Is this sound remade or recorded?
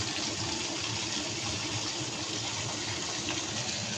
recorded